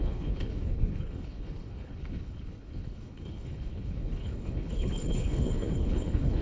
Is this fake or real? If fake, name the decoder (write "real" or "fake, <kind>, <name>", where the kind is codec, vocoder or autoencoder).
fake, codec, HILCodec